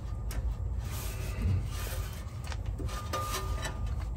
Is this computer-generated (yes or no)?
no